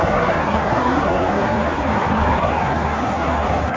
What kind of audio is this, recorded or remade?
remade